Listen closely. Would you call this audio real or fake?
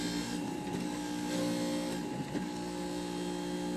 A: real